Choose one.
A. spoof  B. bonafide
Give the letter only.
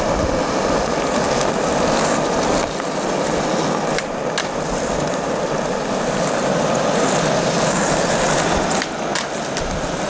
B